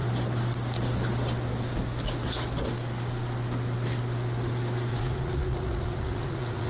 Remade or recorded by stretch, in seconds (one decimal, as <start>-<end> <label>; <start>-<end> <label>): 0.0-4.9 recorded; 4.9-6.7 remade